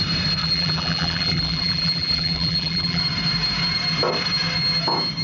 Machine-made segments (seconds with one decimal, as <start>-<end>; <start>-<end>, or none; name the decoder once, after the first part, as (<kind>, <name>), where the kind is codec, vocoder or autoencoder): 0.4-3.0 (vocoder, BigVGAN v2)